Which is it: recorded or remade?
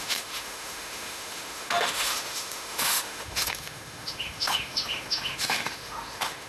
remade